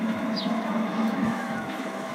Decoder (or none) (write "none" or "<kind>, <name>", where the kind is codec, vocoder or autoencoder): autoencoder, DAC-VAE